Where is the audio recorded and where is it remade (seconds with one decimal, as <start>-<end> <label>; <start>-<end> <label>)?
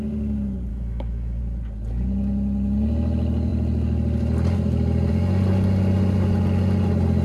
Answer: 0.0-0.7 recorded; 0.7-1.4 remade; 1.4-7.2 recorded